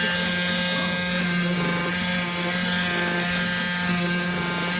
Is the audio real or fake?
real